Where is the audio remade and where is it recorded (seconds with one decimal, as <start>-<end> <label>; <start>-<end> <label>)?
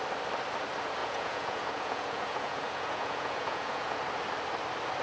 0.0-1.0 recorded; 1.0-4.0 remade; 4.0-5.0 recorded